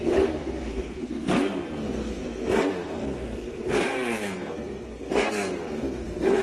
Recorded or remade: remade